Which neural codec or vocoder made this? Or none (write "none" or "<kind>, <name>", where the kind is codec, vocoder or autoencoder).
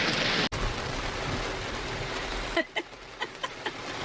none